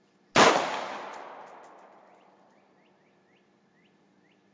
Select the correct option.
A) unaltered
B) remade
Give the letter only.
A